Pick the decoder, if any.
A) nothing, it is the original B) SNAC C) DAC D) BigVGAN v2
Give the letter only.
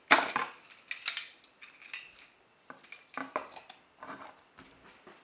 A